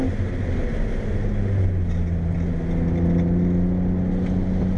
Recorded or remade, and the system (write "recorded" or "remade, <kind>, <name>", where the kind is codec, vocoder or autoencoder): recorded